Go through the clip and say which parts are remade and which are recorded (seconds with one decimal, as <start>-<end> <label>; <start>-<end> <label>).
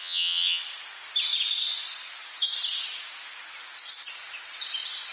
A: 0.0-0.6 remade; 0.6-5.1 recorded